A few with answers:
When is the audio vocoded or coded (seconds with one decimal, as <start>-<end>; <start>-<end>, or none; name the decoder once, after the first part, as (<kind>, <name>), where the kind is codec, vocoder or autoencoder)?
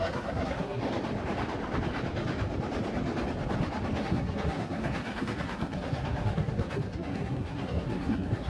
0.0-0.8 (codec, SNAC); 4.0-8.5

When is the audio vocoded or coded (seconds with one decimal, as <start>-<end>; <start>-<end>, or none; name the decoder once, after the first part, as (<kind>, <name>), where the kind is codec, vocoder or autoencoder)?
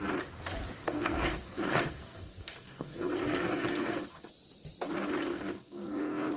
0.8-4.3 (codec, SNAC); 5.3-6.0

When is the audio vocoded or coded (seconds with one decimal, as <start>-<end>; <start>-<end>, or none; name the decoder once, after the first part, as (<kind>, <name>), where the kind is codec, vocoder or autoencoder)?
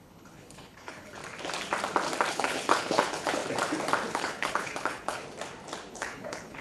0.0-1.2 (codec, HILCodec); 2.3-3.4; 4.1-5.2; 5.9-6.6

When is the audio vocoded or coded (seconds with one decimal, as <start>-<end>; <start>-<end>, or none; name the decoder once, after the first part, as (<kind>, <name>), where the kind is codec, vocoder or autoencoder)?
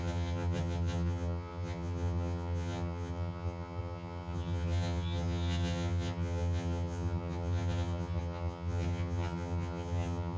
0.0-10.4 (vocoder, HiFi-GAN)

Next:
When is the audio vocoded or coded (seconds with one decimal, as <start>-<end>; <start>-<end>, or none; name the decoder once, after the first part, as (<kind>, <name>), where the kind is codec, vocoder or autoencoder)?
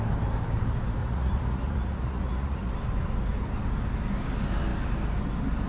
1.0-2.7 (vocoder, Vocos)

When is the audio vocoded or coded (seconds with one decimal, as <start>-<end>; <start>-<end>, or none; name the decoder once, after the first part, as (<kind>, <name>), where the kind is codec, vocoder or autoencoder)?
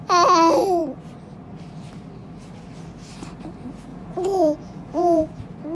3.9-5.2 (vocoder, Vocos)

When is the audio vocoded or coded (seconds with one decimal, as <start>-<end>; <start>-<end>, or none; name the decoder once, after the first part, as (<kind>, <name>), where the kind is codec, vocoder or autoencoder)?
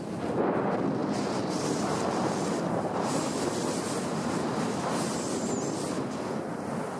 1.0-5.2 (vocoder, BigVGAN v2)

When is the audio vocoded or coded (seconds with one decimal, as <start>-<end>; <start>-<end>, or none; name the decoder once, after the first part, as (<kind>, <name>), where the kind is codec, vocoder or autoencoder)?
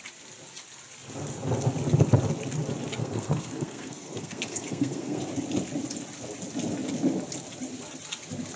3.0-5.2 (codec, SNAC)